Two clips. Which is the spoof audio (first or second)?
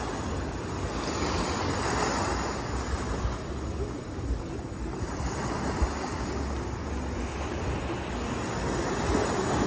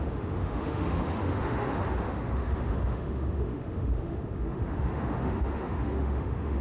second